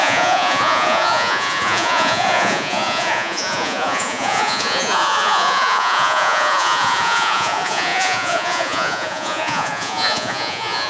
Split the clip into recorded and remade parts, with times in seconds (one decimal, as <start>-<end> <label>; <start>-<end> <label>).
0.0-10.9 remade